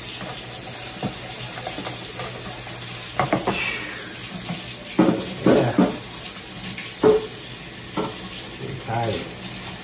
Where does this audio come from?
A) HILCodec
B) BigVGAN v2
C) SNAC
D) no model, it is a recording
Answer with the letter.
D